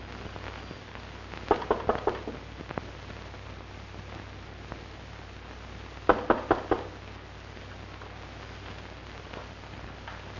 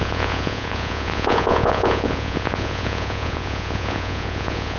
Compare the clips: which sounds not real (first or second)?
second